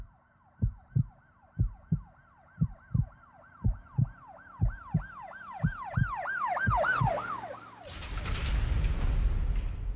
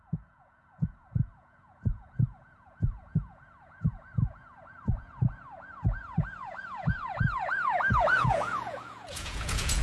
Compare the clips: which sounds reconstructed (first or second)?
second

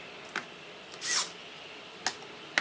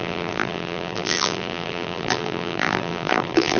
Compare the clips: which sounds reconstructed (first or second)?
second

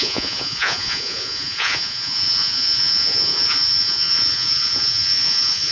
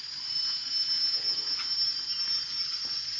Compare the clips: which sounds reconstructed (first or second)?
first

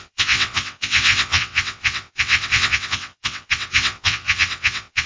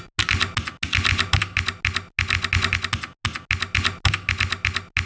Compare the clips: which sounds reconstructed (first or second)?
first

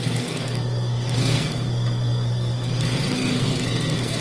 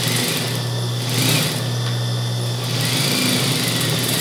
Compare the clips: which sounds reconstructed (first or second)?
first